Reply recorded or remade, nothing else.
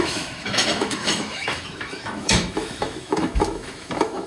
remade